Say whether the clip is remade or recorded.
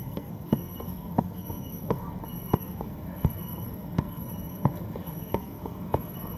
remade